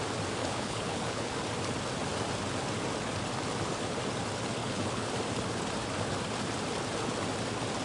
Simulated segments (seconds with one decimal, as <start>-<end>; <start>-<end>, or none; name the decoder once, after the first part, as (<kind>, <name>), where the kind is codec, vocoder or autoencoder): 0.4-1.4 (codec, HILCodec); 4.6-5.1